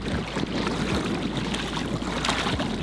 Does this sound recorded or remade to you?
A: recorded